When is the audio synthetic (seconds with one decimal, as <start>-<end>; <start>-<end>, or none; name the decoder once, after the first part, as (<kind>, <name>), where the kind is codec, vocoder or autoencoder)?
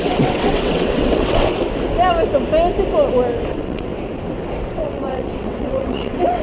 0.0-1.5 (vocoder, WaveNeXt); 3.5-3.9; 4.7-6.4